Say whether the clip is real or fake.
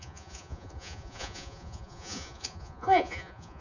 fake